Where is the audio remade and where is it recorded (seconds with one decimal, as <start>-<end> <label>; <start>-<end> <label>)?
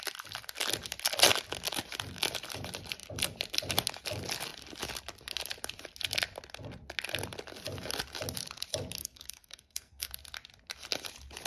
0.0-9.0 recorded; 9.0-10.1 remade; 10.1-11.5 recorded